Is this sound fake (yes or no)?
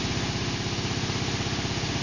no